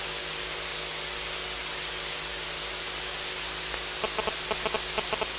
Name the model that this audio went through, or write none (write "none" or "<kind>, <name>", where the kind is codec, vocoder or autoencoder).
none